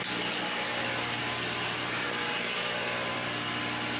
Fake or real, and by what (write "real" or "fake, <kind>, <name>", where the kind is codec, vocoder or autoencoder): real